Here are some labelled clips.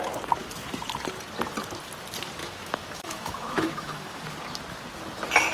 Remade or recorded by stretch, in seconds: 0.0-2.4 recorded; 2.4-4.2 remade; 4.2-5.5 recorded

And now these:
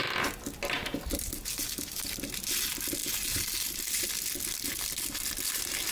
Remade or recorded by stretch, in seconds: 0.0-5.9 recorded

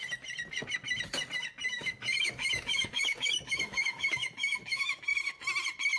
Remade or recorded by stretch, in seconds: 0.0-1.7 recorded; 1.7-5.0 remade; 5.0-6.0 recorded

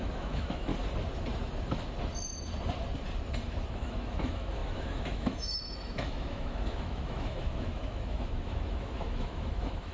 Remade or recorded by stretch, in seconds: 0.0-0.7 remade; 0.7-3.7 recorded; 3.7-9.9 remade

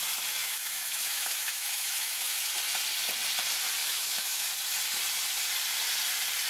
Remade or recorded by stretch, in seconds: 0.0-0.4 recorded; 0.4-2.5 remade; 2.5-3.8 recorded; 3.8-4.5 remade; 4.5-6.5 recorded

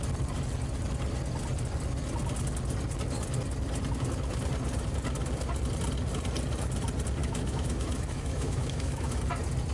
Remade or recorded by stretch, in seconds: 0.0-7.2 recorded; 7.2-9.2 remade; 9.2-9.7 recorded